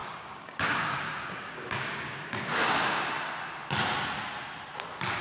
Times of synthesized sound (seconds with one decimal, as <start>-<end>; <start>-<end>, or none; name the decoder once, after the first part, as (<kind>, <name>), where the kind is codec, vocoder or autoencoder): 0.0-3.1 (codec, DAC)